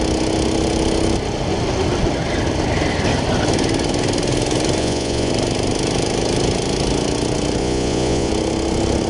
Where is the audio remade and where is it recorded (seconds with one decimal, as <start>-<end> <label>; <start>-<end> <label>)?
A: 0.0-4.8 recorded; 4.8-5.3 remade; 5.3-7.6 recorded; 7.6-8.3 remade; 8.3-9.1 recorded